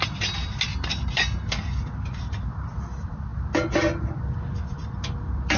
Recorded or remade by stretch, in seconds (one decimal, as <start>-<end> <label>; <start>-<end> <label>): 0.0-5.6 recorded